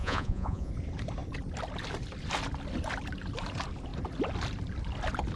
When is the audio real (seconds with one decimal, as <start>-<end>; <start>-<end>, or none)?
0.7-5.4